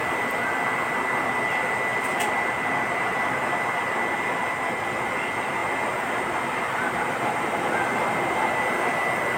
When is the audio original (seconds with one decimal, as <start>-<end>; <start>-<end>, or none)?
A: 0.0-1.9; 4.1-9.4